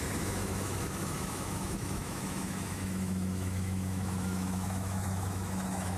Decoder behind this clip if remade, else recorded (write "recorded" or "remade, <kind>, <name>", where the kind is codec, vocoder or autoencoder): remade, autoencoder, DAC-VAE